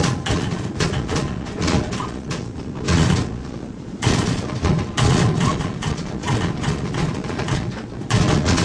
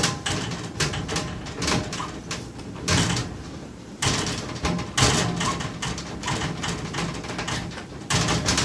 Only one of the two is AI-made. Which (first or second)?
first